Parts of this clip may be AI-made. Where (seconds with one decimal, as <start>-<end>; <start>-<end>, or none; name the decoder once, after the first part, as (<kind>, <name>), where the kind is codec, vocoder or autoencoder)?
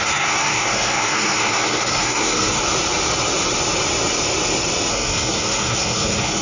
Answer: 0.0-2.6 (codec, SNAC); 4.9-6.4